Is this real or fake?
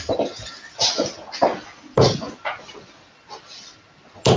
real